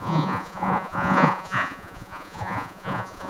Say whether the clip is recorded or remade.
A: remade